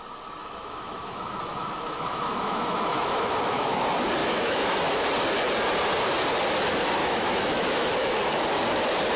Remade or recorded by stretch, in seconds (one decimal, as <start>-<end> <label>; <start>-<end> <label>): 0.0-0.4 recorded; 0.4-3.8 remade; 3.8-4.2 recorded; 4.2-4.8 remade; 4.8-7.0 recorded; 7.0-8.1 remade; 8.1-9.2 recorded